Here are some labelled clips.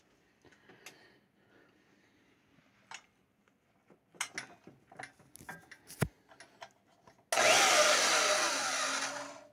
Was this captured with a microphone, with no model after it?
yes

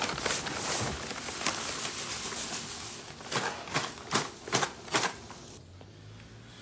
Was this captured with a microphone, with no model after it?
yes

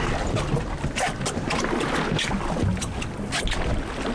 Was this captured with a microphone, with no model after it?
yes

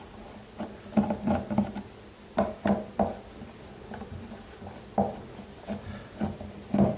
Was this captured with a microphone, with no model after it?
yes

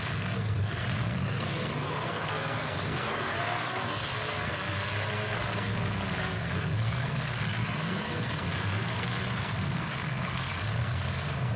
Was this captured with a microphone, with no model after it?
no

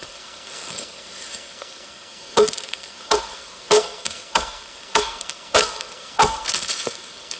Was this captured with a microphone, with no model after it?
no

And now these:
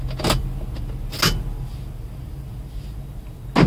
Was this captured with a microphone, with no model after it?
yes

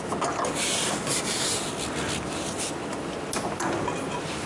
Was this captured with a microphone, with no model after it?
yes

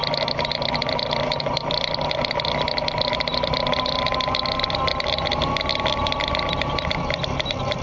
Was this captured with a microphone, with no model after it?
yes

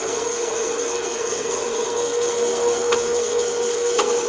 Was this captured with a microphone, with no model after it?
no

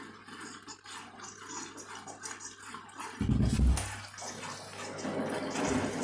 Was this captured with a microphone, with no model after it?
yes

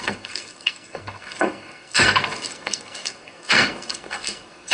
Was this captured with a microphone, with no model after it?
no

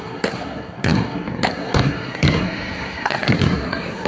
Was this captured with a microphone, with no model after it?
no